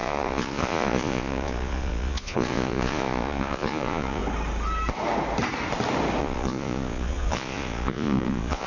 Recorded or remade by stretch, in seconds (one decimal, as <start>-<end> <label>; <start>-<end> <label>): 0.0-4.2 remade; 4.2-6.2 recorded; 6.2-8.7 remade